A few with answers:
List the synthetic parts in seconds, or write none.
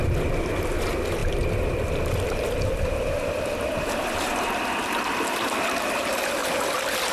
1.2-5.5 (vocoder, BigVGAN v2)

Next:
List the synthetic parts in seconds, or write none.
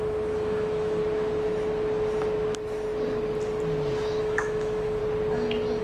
0.0-1.0 (autoencoder, DAC-VAE); 4.2-5.0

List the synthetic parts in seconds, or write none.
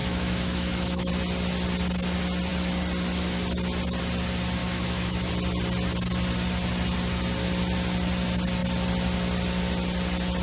0.0-1.1 (autoencoder, DAC-VAE); 4.6-5.3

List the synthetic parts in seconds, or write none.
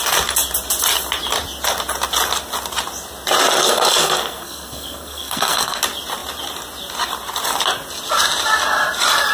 3.6-5.8 (codec, SNAC)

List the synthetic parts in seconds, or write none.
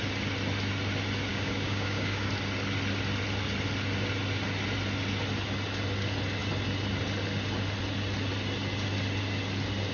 1.3-2.3 (codec, DAC)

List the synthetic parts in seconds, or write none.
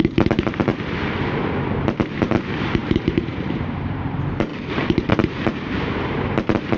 0.0-0.7 (vocoder, BigVGAN v2); 2.2-4.5; 5.1-6.8